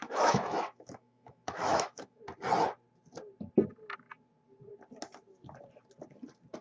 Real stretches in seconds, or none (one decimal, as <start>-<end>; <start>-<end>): 2.2-6.6